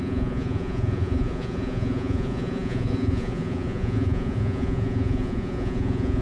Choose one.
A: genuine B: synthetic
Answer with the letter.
B